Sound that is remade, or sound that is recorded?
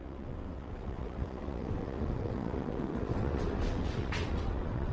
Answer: remade